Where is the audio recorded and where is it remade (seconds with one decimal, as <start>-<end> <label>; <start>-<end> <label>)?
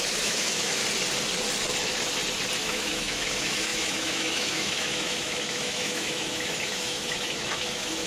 0.0-0.8 remade; 0.8-2.6 recorded; 2.6-8.1 remade